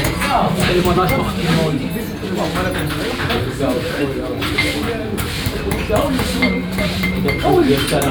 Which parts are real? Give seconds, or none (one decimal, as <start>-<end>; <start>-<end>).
1.6-3.4